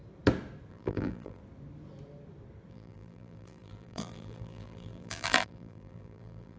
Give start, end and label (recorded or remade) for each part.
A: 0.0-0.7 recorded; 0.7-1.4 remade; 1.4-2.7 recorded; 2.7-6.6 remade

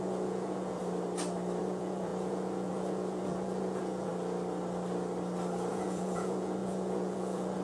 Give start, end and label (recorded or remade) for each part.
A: 0.0-0.8 remade; 0.8-1.6 recorded; 1.6-4.1 remade; 4.1-5.7 recorded; 5.7-7.6 remade

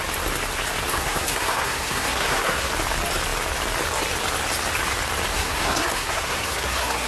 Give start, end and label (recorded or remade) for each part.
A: 0.0-0.9 recorded; 0.9-2.7 remade; 2.7-5.3 recorded; 5.3-7.1 remade

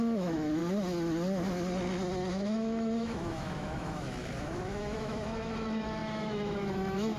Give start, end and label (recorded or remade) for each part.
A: 0.0-0.6 remade; 0.6-2.3 recorded; 2.3-7.2 remade

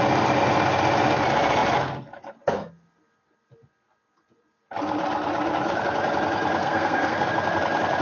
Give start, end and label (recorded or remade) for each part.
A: 0.0-6.6 recorded; 6.6-7.3 remade; 7.3-8.0 recorded

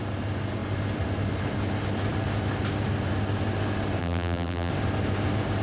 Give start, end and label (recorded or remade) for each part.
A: 0.0-4.0 recorded; 4.0-4.7 remade; 4.7-5.6 recorded

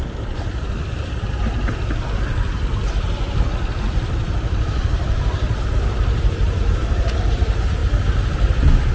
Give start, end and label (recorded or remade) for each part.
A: 0.0-8.9 remade